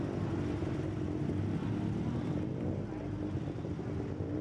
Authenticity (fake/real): real